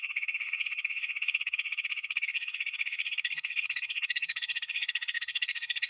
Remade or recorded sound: remade